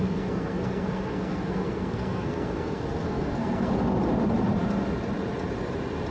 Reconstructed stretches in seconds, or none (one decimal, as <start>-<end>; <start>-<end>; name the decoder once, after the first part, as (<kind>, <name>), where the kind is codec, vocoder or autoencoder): 0.0-3.7 (codec, SNAC)